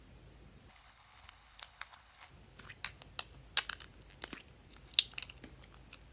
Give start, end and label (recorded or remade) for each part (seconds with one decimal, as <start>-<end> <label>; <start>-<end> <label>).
0.0-0.7 recorded; 0.7-2.3 remade; 2.3-6.1 recorded